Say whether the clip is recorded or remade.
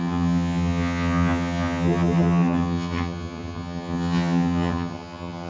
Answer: remade